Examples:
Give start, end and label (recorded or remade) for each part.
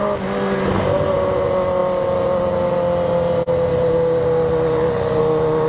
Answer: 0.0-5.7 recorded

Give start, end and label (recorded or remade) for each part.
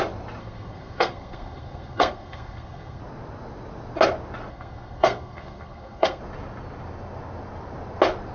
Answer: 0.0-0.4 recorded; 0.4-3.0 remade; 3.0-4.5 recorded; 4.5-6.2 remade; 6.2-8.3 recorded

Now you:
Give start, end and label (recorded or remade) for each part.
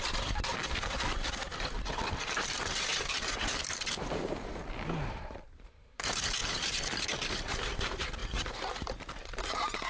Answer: 0.0-6.4 remade; 6.4-7.3 recorded; 7.3-9.9 remade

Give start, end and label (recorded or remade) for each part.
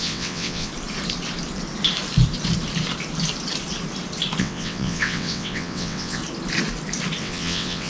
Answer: 0.0-0.7 remade; 0.7-4.4 recorded; 4.4-6.2 remade; 6.2-7.2 recorded; 7.2-7.9 remade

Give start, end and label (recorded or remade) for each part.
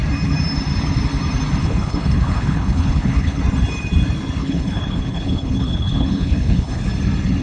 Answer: 0.0-1.6 recorded; 1.6-3.4 remade; 3.4-4.4 recorded; 4.4-6.8 remade; 6.8-7.4 recorded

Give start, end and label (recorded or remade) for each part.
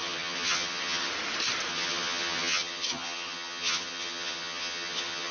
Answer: 0.0-1.1 remade; 1.1-1.7 recorded; 1.7-5.3 remade